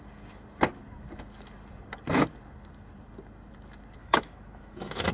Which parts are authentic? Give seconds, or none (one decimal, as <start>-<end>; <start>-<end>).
0.0-4.0